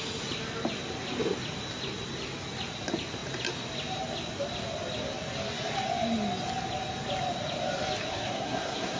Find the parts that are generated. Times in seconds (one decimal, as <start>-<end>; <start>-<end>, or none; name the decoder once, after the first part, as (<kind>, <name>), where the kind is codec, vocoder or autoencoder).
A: 8.1-9.0 (codec, SNAC)